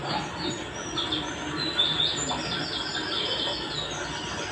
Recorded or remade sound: recorded